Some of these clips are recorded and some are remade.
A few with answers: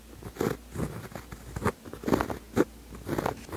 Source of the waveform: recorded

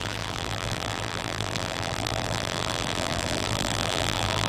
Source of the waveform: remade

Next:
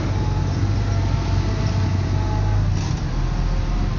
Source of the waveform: recorded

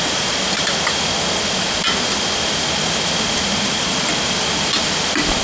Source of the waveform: recorded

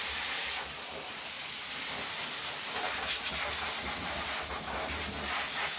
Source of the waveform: recorded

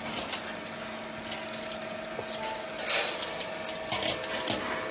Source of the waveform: recorded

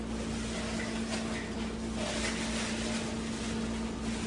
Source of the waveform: recorded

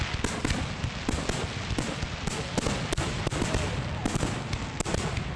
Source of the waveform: recorded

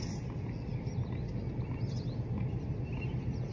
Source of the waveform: recorded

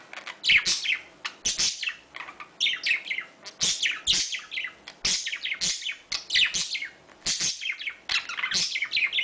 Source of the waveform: recorded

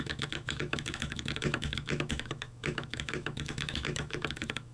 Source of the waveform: remade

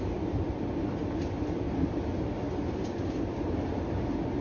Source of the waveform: recorded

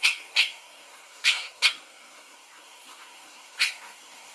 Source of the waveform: remade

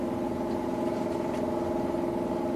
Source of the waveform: recorded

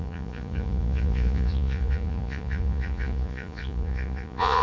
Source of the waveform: remade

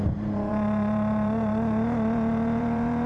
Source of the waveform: remade